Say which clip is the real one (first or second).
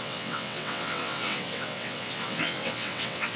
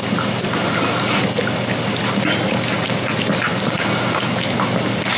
second